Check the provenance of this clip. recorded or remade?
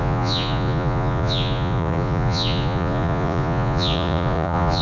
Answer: remade